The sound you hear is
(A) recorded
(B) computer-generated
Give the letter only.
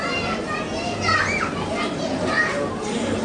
A